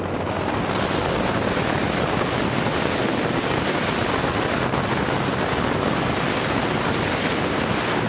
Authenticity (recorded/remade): recorded